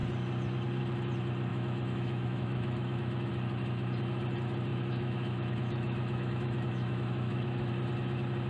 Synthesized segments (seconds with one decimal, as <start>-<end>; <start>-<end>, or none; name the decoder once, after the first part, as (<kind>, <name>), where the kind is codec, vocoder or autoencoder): 1.5-3.3 (autoencoder, DAC-VAE); 4.7-7.7